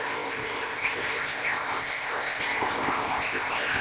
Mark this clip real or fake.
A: fake